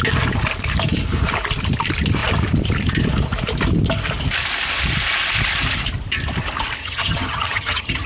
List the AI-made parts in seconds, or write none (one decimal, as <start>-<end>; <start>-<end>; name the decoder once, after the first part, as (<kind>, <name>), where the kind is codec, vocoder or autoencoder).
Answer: 6.8-8.1 (vocoder, HiFi-GAN)